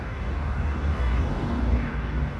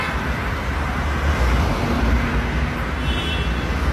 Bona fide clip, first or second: second